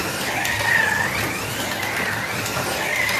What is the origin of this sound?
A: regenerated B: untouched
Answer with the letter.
B